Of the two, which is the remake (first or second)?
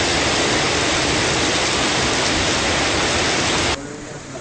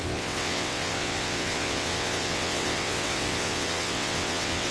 second